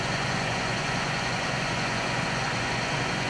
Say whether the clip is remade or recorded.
remade